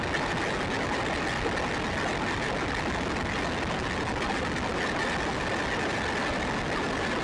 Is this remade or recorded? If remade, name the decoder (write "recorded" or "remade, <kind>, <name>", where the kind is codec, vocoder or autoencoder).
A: recorded